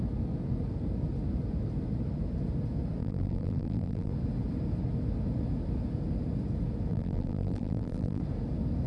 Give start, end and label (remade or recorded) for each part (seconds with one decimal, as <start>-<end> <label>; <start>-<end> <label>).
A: 0.0-3.0 recorded; 3.0-4.1 remade; 4.1-6.9 recorded; 6.9-8.2 remade; 8.2-8.9 recorded